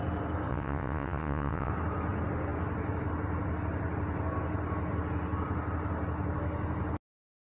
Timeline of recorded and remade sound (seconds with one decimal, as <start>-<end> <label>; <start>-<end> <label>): 0.0-0.5 recorded; 0.5-1.7 remade; 1.7-7.5 recorded